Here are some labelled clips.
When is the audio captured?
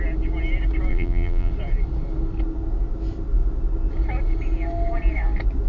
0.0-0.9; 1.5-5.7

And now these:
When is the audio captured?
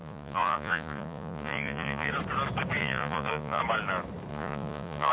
2.1-2.8; 3.6-4.3